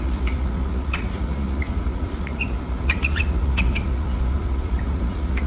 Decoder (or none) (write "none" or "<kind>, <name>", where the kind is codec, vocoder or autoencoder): vocoder, Vocos